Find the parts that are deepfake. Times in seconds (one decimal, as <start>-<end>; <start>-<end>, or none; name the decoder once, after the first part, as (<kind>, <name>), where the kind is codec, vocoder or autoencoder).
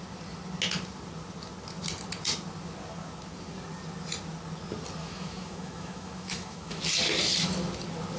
5.0-6.8 (autoencoder, DAC-VAE)